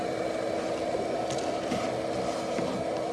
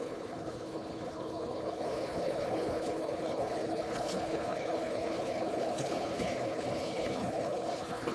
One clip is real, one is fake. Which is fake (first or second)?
second